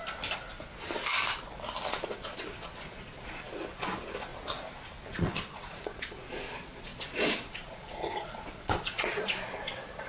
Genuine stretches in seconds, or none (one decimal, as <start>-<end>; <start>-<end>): 0.0-1.9; 4.3-5.1